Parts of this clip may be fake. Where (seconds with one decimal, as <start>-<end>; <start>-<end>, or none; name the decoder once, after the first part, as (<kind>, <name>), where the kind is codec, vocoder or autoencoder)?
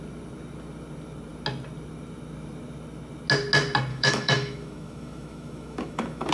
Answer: 3.9-6.3 (autoencoder, DAC-VAE)